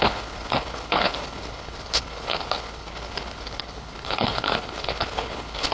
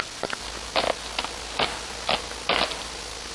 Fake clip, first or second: first